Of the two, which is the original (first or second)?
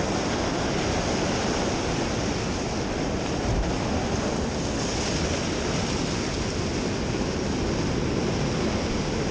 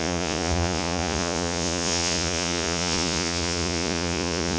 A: first